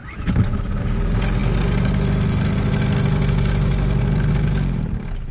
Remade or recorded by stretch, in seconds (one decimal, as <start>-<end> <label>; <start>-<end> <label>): 0.0-5.3 recorded

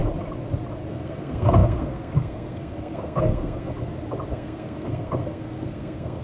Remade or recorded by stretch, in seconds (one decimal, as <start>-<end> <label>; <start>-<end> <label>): 0.0-0.9 recorded; 0.9-3.7 remade; 3.7-4.3 recorded; 4.3-6.2 remade